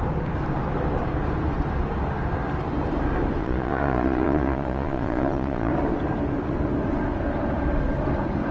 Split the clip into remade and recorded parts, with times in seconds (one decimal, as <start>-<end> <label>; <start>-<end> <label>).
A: 0.0-3.4 recorded; 3.4-5.7 remade; 5.7-8.5 recorded